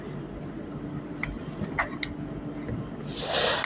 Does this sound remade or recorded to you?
recorded